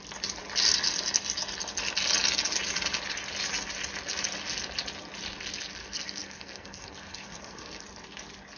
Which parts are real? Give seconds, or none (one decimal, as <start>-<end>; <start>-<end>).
0.0-5.8; 7.8-8.6